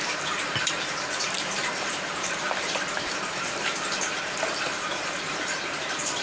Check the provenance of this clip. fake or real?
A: fake